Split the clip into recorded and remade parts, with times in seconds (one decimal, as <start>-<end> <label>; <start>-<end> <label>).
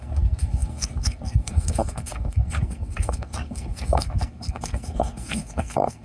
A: 0.0-6.0 remade